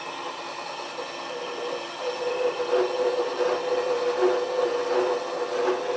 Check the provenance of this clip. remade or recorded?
recorded